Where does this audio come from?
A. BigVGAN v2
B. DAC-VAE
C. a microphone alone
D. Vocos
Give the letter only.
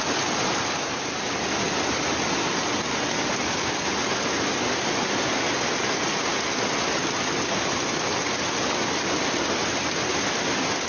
C